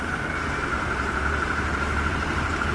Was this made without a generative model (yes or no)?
no